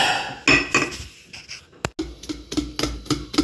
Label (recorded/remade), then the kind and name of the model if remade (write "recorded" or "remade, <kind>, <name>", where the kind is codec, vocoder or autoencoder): recorded